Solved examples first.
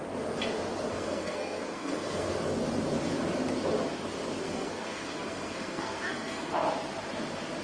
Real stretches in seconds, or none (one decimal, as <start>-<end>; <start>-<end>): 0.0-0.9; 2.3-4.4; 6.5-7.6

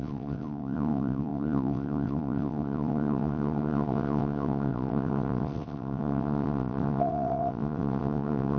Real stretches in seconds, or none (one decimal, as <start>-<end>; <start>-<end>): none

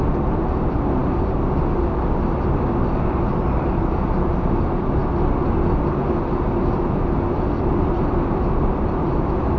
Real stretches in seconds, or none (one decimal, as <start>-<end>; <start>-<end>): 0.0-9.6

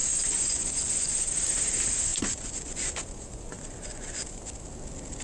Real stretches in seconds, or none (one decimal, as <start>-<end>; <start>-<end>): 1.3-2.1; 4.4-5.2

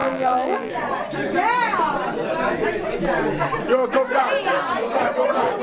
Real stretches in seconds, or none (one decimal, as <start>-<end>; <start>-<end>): 0.7-5.6

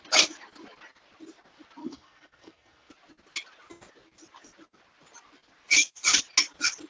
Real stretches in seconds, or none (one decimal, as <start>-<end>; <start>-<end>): 0.0-1.8; 2.9-6.9